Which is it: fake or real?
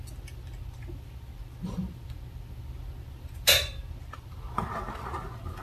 real